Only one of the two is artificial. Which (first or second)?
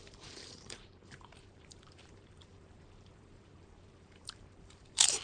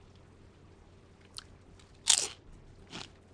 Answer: first